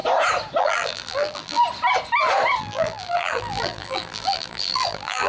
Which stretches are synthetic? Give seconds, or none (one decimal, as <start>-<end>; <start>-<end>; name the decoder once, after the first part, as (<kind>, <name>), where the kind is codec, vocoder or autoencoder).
0.6-1.6 (vocoder, BigVGAN v2); 2.6-5.3